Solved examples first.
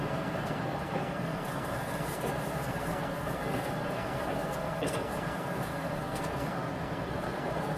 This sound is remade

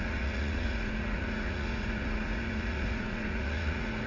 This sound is remade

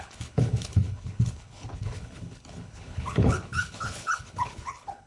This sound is remade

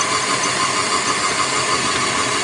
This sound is recorded